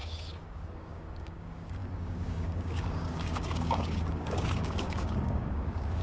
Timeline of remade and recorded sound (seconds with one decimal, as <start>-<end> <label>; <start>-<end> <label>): 0.0-6.0 remade